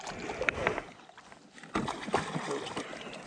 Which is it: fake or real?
real